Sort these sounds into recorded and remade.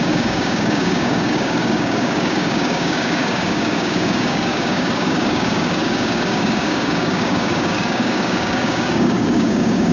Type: remade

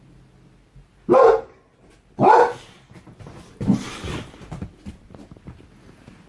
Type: recorded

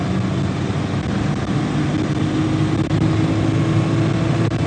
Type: recorded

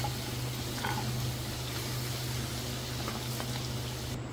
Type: recorded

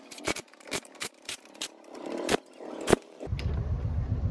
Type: remade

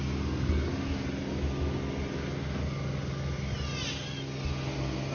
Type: recorded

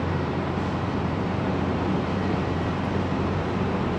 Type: remade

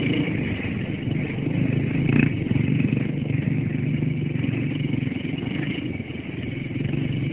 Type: recorded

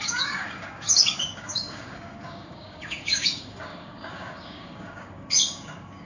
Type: remade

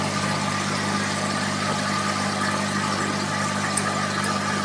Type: recorded